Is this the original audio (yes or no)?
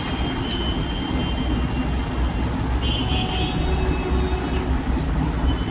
yes